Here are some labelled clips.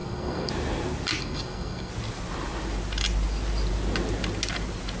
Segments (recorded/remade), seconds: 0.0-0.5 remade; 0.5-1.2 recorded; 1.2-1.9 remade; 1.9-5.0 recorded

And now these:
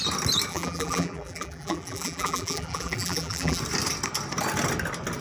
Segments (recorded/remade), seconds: 0.0-0.5 recorded; 0.5-3.6 remade; 3.6-5.2 recorded

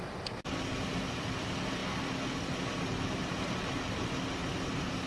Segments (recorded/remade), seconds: 0.0-5.1 recorded